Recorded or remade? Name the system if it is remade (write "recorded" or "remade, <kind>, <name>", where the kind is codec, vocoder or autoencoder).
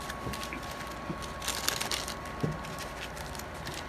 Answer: recorded